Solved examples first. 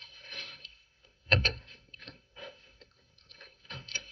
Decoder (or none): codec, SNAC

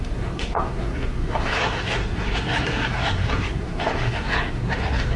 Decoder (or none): codec, SNAC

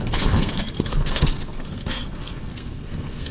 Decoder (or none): codec, SNAC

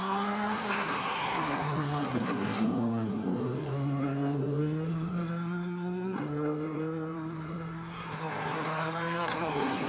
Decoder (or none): codec, SNAC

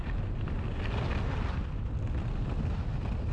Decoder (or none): none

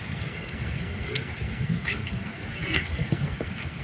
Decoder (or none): codec, SNAC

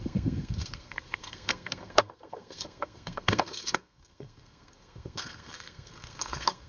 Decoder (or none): codec, SNAC